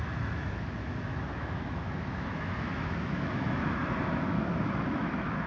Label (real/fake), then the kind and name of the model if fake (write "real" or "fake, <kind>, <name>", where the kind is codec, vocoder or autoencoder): fake, autoencoder, DAC-VAE